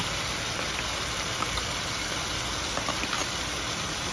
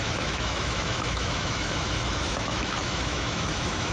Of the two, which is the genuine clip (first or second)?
first